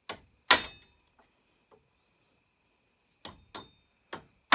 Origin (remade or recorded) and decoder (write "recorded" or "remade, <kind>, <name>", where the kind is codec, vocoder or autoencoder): recorded